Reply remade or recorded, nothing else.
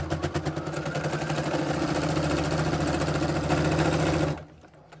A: recorded